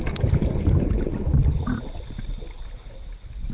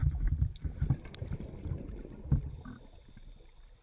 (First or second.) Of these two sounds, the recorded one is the second